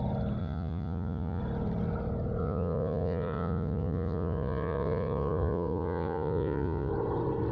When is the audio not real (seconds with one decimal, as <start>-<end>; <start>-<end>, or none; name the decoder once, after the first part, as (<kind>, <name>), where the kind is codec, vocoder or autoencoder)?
0.4-1.4 (vocoder, Vocos); 2.4-6.9